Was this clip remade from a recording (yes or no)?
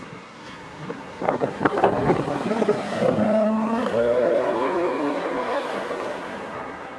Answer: yes